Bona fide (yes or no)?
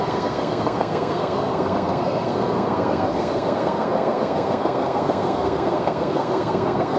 no